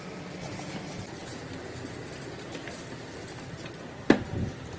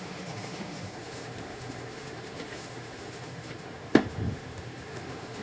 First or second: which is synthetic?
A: second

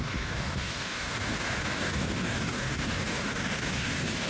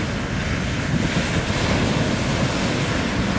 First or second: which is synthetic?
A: first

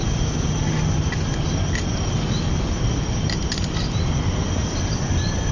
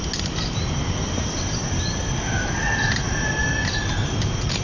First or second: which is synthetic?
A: first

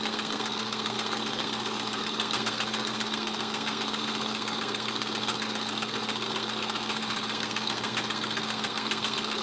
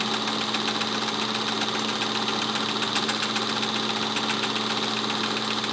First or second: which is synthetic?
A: first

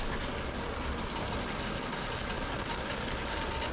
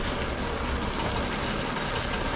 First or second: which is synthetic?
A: first